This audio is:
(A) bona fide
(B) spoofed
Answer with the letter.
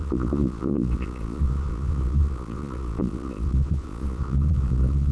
B